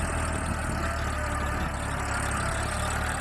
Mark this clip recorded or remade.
recorded